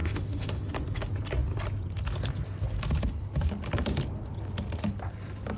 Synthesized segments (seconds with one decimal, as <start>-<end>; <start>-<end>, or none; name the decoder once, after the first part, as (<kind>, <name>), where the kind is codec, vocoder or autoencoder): 0.0-0.7 (autoencoder, DAC-VAE)